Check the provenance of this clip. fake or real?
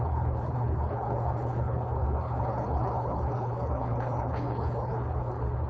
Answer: fake